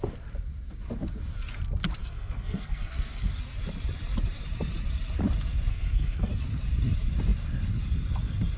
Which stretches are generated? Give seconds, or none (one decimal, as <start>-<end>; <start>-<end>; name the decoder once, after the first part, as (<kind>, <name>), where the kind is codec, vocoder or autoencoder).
2.0-3.3 (codec, SNAC); 5.7-6.3